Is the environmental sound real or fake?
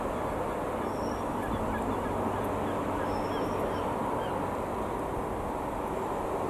real